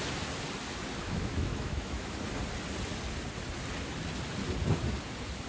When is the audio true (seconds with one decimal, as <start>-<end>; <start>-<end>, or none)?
0.0-1.0; 2.2-5.5

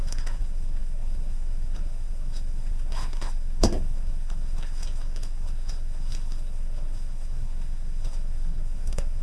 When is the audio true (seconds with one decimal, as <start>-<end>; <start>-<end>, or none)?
none

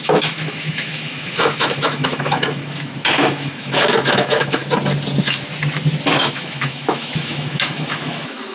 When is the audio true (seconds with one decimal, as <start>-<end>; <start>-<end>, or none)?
4.6-6.1

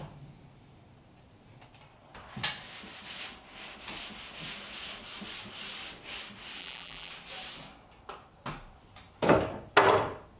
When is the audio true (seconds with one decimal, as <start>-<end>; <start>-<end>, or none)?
0.0-6.6; 7.1-10.4

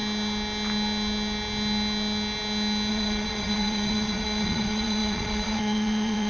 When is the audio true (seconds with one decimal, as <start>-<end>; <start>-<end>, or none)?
0.0-2.9